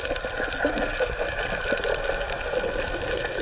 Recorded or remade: recorded